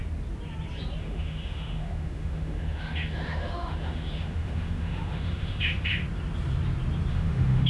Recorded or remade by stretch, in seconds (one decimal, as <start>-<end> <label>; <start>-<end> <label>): 0.0-1.0 recorded; 1.0-6.0 remade; 6.0-7.1 recorded; 7.1-7.7 remade